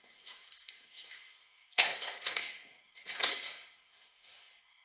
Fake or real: fake